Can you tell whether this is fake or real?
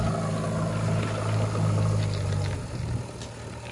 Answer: real